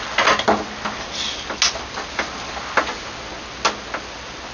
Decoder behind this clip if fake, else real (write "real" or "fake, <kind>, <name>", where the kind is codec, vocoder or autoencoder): real